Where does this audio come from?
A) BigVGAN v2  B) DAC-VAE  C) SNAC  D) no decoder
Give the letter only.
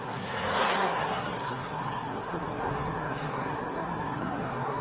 C